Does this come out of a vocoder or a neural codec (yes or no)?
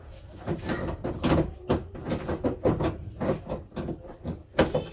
no